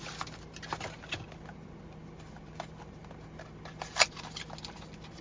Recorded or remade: recorded